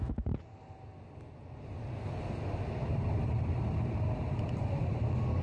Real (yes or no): yes